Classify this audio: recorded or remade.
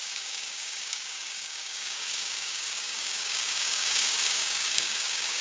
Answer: remade